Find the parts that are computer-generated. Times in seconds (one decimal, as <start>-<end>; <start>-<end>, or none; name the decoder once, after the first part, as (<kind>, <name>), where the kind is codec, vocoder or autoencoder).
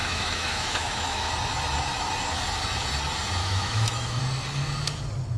0.0-1.3 (autoencoder, DAC-VAE); 3.4-4.2